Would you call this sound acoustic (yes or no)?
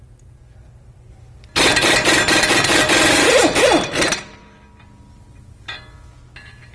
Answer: yes